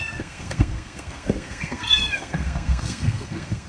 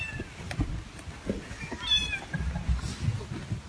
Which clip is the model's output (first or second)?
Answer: first